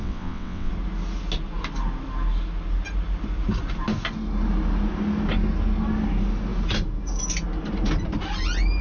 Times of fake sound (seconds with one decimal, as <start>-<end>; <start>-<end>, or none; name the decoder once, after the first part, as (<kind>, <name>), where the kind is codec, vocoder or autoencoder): 0.0-0.7 (vocoder, WaveNeXt)